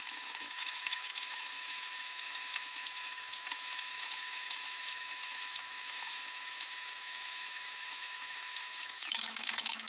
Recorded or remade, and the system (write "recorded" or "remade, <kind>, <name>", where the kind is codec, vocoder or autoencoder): remade, autoencoder, DAC-VAE